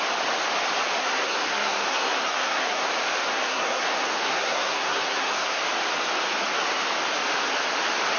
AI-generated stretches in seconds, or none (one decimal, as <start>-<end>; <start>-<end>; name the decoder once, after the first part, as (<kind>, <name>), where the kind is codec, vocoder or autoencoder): 1.0-2.9 (codec, SNAC); 3.3-5.6